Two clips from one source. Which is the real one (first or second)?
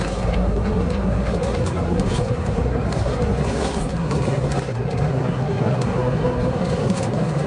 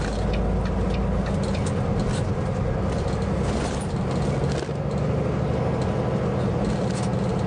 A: second